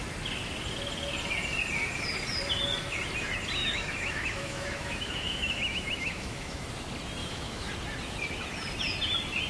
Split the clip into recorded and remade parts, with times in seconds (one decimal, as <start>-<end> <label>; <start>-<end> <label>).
0.0-3.6 recorded; 3.6-6.7 remade; 6.7-7.2 recorded; 7.2-7.7 remade; 7.7-9.5 recorded

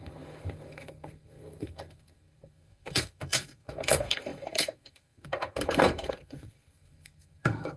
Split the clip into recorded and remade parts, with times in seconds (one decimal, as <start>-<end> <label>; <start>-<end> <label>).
0.0-7.8 remade